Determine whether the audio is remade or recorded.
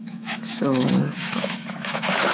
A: remade